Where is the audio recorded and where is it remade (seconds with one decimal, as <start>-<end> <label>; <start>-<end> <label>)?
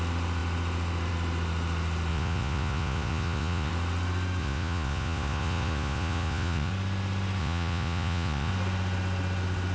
0.0-2.1 recorded; 2.1-3.7 remade; 3.7-4.4 recorded; 4.4-6.7 remade; 6.7-7.4 recorded; 7.4-8.5 remade; 8.5-9.7 recorded